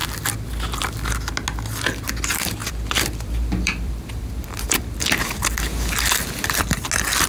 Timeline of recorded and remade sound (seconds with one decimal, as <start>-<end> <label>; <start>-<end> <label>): 0.0-2.6 recorded; 2.6-4.8 remade; 4.8-7.3 recorded